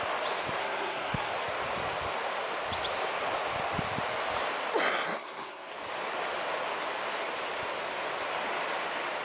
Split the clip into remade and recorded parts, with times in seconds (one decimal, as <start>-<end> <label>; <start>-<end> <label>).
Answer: 0.0-0.6 recorded; 0.6-1.3 remade; 1.3-5.1 recorded; 5.1-5.7 remade; 5.7-9.2 recorded